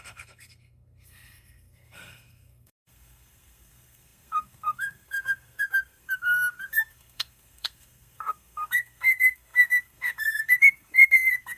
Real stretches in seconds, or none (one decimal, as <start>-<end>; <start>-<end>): none